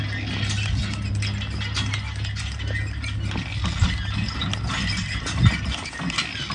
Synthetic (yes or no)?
no